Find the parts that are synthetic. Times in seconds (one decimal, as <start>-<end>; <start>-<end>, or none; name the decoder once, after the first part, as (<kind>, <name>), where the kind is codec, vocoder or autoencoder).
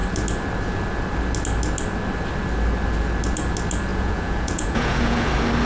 3.9-5.3 (vocoder, Vocos)